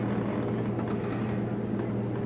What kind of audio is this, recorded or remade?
recorded